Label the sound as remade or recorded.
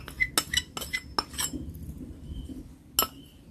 recorded